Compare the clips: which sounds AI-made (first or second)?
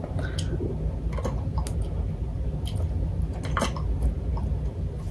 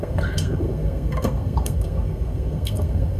second